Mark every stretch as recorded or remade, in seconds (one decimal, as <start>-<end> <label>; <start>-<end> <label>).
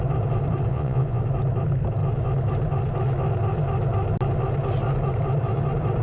0.0-0.7 recorded; 0.7-1.2 remade; 1.2-6.0 recorded